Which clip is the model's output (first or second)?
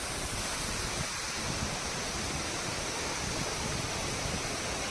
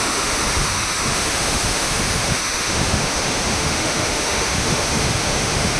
second